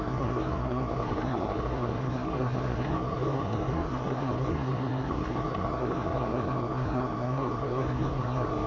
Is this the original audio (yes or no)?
no